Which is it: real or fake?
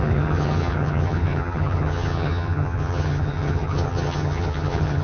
fake